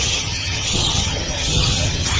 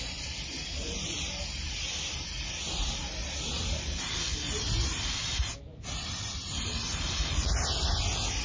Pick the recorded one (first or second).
second